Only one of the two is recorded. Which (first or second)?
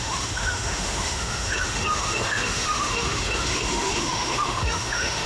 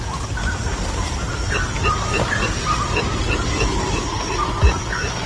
second